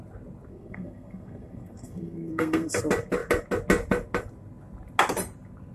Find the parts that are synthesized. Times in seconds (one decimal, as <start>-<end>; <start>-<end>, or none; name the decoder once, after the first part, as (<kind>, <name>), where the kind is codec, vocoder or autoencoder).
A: 0.5-2.8 (codec, SNAC)